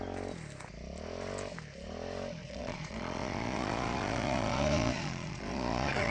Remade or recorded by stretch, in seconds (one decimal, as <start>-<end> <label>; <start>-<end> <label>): 0.0-2.4 recorded; 2.4-6.1 remade